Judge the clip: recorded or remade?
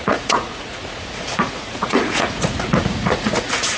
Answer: remade